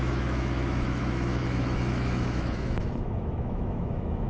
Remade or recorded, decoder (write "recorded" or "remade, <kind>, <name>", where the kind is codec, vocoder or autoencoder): remade, autoencoder, DAC-VAE